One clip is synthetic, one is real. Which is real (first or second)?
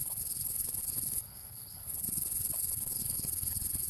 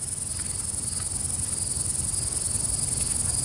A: second